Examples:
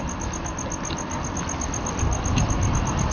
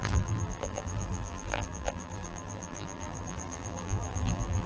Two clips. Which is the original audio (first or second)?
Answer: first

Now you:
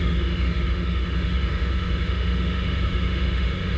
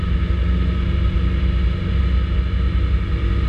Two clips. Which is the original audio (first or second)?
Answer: second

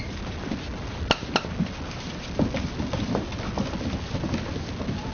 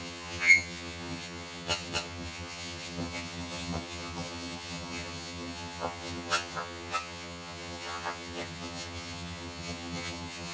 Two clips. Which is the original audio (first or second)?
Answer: first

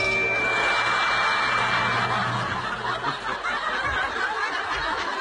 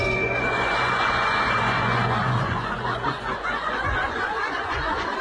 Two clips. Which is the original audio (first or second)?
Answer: first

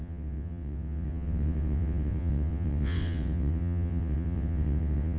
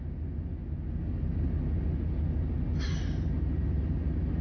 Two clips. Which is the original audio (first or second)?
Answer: second